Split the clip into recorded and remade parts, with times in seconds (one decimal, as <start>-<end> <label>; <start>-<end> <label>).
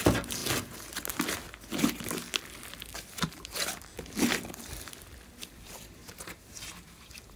0.0-6.0 recorded; 6.0-7.4 remade